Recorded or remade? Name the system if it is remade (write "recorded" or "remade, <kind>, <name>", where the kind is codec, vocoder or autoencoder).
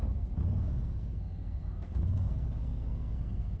remade, codec, SNAC